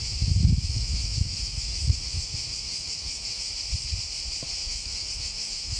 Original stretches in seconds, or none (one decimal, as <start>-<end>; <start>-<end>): 3.5-4.6